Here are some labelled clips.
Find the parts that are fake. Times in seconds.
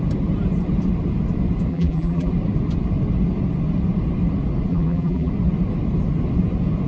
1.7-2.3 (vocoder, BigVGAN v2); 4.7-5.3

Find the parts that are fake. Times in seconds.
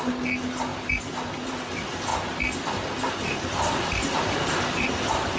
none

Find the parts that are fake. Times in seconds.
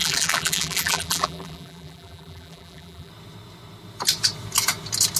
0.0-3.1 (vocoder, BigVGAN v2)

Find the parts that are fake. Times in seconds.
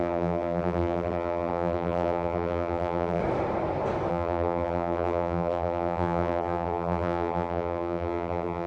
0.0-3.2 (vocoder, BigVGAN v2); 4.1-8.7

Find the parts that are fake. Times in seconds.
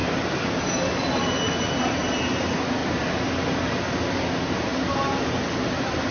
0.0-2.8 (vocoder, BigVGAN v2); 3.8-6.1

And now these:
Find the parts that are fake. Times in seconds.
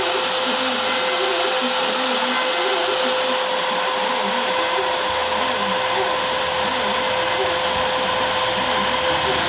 none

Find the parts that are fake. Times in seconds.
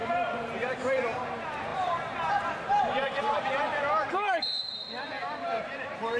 0.0-4.7 (vocoder, BigVGAN v2); 5.2-6.2